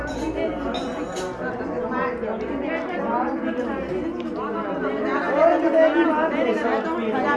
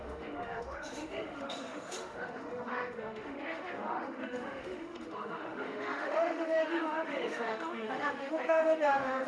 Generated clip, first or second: second